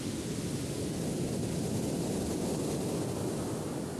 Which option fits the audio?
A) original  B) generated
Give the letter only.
A